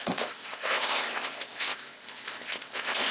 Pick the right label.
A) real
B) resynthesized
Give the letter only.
B